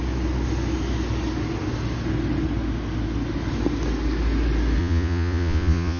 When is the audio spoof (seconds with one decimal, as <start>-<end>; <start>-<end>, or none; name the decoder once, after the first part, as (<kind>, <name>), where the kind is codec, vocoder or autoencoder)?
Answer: 4.8-6.0 (vocoder, Vocos)